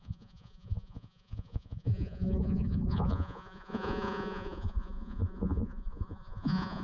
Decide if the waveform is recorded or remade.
remade